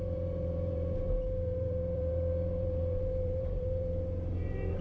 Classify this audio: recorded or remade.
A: remade